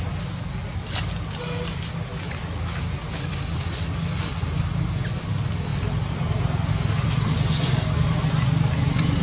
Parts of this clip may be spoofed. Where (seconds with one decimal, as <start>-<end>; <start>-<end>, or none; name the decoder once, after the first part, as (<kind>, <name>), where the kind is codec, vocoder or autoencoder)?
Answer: none